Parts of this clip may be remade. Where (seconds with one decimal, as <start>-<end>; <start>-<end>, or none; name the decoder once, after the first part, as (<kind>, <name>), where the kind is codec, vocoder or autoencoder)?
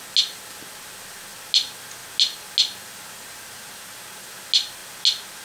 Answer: none